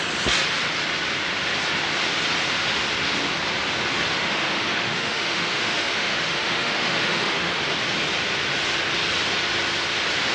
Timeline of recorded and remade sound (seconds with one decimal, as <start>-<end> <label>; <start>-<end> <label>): 0.0-4.1 recorded; 4.1-7.5 remade; 7.5-10.3 recorded